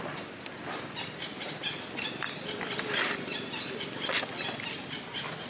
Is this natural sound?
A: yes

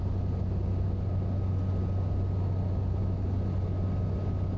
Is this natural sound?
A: yes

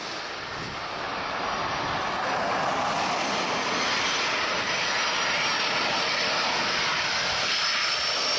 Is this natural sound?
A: yes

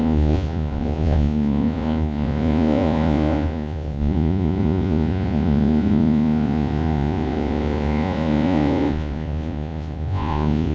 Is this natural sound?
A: no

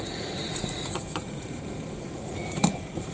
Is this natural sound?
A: no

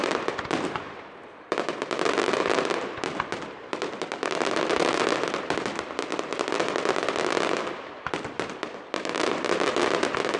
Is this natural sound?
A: no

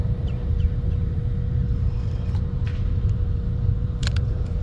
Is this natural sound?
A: no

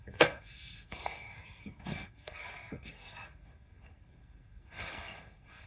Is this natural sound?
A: no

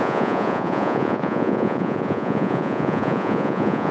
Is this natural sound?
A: no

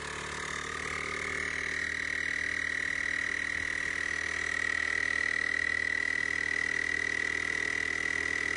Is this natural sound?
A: yes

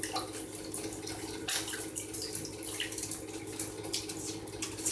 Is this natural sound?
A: yes